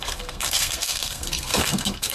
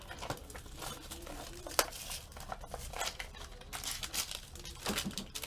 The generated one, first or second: first